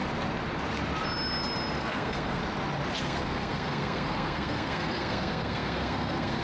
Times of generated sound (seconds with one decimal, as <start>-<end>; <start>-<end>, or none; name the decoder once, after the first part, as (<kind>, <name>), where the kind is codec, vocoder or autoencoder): 1.8-2.4 (codec, SNAC); 3.0-6.4